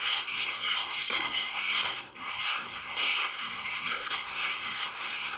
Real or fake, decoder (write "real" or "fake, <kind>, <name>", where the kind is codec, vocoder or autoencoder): fake, codec, SNAC